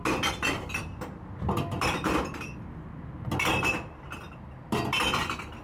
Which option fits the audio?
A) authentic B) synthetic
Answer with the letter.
A